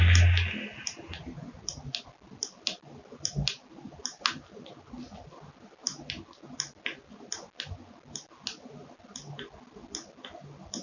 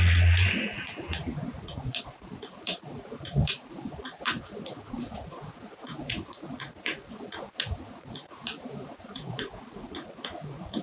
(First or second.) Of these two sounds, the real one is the first